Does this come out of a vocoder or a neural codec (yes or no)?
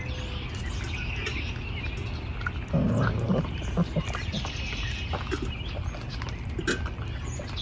no